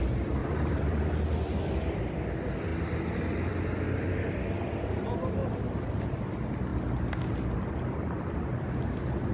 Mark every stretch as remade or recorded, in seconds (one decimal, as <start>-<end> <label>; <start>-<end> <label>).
0.0-0.4 recorded; 0.4-2.0 remade; 2.0-5.4 recorded; 5.4-6.0 remade; 6.0-9.3 recorded